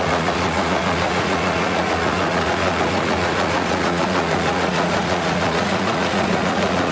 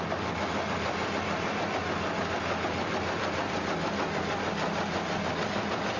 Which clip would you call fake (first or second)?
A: first